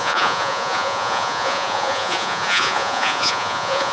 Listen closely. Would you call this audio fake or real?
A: fake